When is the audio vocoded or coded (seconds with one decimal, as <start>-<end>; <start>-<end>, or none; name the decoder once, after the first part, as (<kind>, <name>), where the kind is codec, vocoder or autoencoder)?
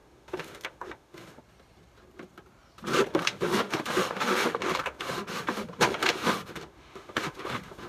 0.0-1.4 (autoencoder, DAC-VAE); 3.1-7.9